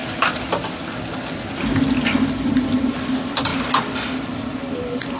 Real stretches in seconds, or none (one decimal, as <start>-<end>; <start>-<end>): 0.0-5.2